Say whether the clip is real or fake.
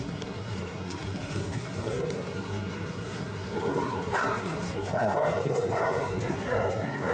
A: fake